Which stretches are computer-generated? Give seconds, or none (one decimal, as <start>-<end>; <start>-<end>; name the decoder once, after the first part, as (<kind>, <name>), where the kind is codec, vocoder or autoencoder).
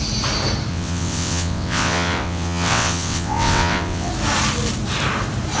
0.7-4.1 (vocoder, WaveNeXt)